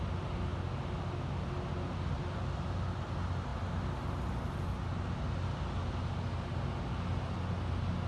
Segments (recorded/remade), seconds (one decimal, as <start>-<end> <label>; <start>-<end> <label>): 0.0-8.1 recorded

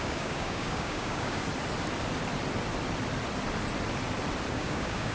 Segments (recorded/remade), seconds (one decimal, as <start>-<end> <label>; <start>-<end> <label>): 0.0-1.4 remade; 1.4-4.5 recorded; 4.5-5.1 remade

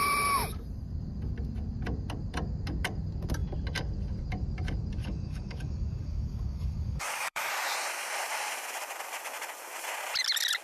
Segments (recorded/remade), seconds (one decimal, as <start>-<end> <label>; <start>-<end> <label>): 0.0-5.0 recorded; 5.0-7.5 remade; 7.5-10.6 recorded

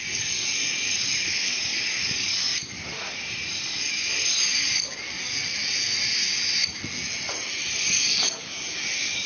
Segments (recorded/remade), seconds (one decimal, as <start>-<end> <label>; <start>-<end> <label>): 0.0-5.5 remade; 5.5-7.7 recorded; 7.7-9.3 remade

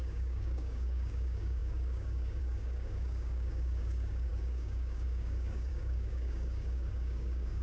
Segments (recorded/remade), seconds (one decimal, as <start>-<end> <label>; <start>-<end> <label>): 0.0-7.6 remade

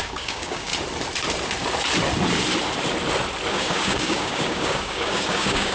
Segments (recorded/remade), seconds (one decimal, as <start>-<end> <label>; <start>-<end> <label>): 0.0-0.7 remade; 0.7-3.5 recorded; 3.5-5.7 remade

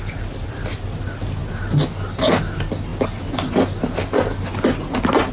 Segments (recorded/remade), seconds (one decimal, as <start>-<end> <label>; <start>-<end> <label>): 0.0-5.3 recorded

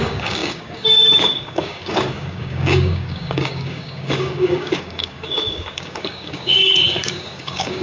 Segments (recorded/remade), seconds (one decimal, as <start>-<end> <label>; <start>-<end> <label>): 0.0-7.8 remade